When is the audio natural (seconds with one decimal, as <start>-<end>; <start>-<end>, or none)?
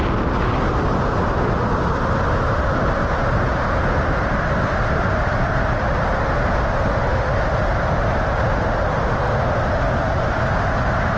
0.0-11.2